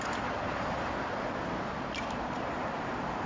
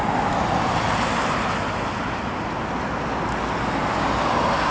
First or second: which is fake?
first